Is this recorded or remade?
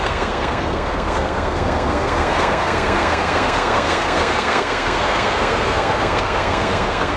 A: remade